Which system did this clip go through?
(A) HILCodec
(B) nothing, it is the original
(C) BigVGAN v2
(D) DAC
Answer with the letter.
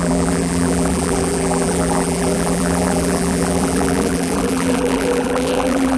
C